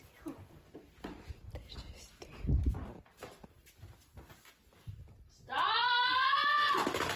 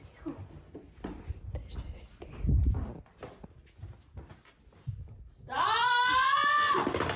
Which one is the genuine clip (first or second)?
second